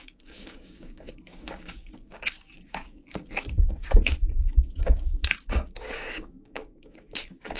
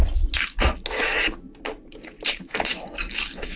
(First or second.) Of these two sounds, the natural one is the second